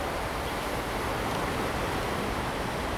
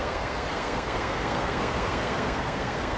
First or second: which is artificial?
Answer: second